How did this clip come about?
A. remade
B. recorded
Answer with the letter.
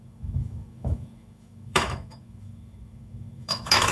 A